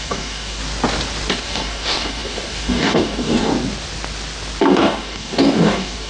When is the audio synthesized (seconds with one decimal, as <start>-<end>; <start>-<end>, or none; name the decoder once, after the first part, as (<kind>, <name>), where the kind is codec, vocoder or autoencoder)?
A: 0.0-0.6 (codec, DAC); 1.3-3.5; 4.6-6.1